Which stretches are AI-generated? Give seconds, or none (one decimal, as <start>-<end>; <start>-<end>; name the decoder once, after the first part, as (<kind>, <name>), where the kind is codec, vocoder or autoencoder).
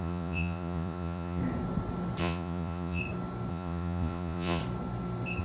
0.0-1.4 (vocoder, Vocos); 2.2-3.0; 3.5-4.6